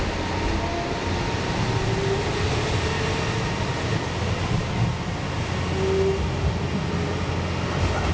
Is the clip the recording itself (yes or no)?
yes